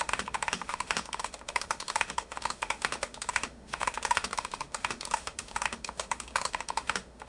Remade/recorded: remade